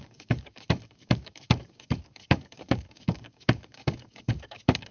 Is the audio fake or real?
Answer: fake